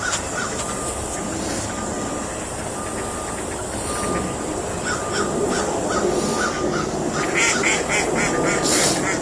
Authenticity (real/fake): real